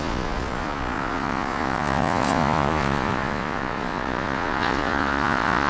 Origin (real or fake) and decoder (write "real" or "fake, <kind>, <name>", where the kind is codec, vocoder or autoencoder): fake, vocoder, Vocos